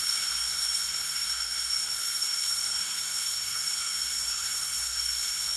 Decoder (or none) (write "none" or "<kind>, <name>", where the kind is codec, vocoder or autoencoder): codec, SNAC